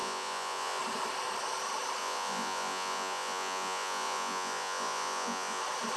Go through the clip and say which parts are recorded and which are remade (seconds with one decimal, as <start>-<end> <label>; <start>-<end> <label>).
0.0-0.8 remade; 0.8-2.0 recorded; 2.0-5.6 remade; 5.6-6.0 recorded